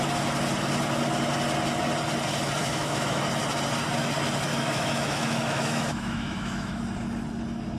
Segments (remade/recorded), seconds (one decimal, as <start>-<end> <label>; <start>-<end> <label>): 0.0-2.6 recorded; 2.6-3.2 remade; 3.2-4.5 recorded; 4.5-6.8 remade; 6.8-7.8 recorded